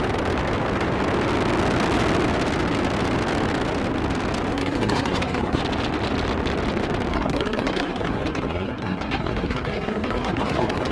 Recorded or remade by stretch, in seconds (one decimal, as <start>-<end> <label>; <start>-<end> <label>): 0.0-4.5 recorded; 4.5-5.6 remade; 5.6-7.1 recorded; 7.1-10.9 remade